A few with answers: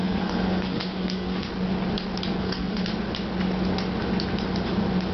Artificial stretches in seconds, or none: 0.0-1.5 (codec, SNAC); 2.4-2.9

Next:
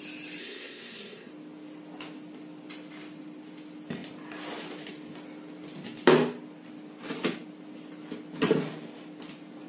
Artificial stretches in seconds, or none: 0.4-1.3 (codec, SNAC)

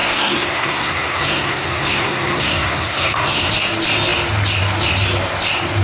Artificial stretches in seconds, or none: 0.0-3.5 (codec, SNAC)